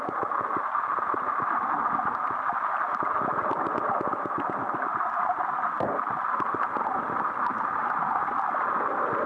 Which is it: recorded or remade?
recorded